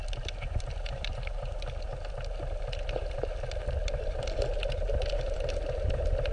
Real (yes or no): yes